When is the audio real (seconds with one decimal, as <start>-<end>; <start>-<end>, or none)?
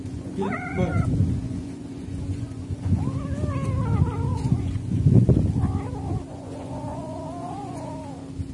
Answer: 3.0-4.3; 5.3-6.3; 7.9-8.5